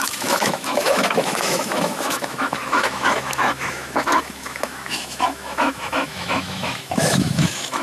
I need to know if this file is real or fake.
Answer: fake